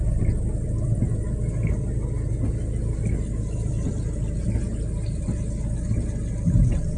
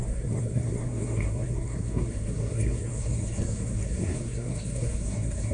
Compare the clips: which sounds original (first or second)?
first